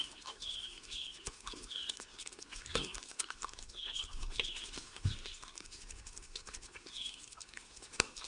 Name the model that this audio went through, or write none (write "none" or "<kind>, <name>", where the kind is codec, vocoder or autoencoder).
codec, SNAC